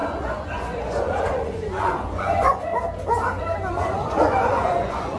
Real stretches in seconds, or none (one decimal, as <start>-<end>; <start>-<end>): 2.7-3.7